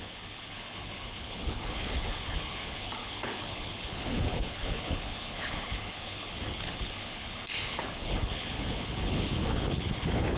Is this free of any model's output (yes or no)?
no